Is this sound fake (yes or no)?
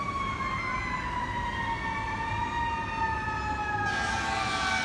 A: no